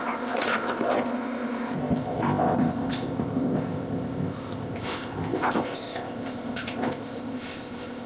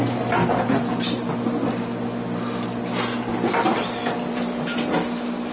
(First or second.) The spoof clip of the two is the first